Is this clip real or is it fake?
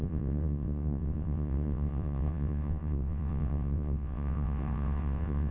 fake